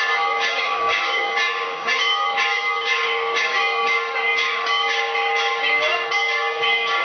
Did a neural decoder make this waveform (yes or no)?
yes